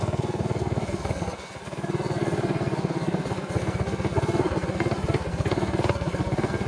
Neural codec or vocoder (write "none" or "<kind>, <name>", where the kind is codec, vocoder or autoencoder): codec, SNAC